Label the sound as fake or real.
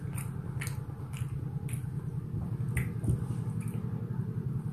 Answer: real